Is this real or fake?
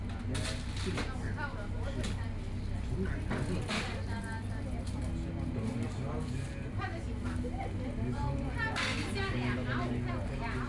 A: real